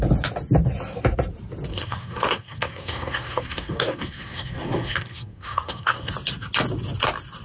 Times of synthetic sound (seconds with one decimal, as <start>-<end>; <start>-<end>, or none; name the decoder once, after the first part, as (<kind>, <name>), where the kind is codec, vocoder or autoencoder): 1.7-6.1 (codec, SNAC)